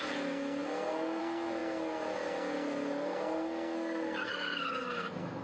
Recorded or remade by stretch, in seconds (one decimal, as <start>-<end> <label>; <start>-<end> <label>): 0.0-5.4 remade